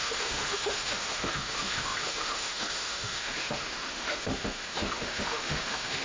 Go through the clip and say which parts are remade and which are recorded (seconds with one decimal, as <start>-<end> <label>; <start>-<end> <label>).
0.0-6.0 remade